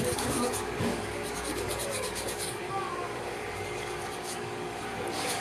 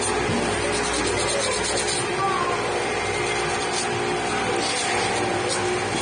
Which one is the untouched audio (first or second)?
second